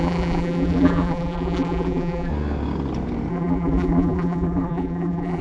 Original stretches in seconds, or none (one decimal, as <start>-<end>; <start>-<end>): 2.3-3.3